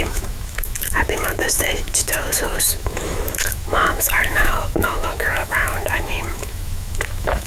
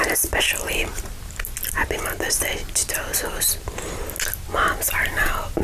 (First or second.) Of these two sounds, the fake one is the first